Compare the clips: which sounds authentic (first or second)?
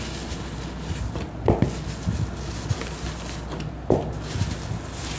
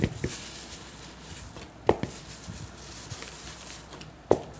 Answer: first